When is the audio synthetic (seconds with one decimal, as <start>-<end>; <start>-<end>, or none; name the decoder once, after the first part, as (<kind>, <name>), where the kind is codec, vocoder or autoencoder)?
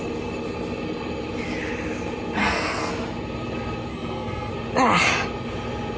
2.4-2.9 (codec, SNAC); 3.9-4.5